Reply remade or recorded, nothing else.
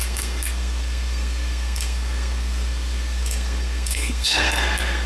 remade